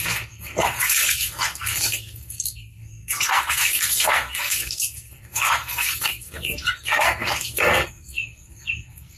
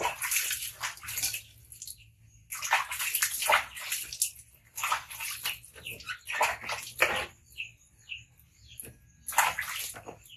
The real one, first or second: second